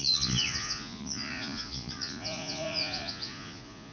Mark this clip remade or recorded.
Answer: remade